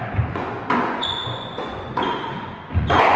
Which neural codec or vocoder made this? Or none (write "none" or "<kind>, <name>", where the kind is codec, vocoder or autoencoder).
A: vocoder, Vocos